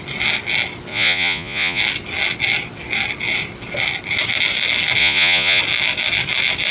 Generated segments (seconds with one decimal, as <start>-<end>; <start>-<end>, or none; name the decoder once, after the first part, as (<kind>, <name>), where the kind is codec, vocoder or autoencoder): 0.9-1.8 (vocoder, Vocos); 5.0-5.6